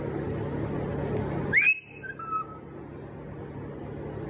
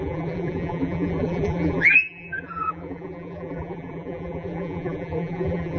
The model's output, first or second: second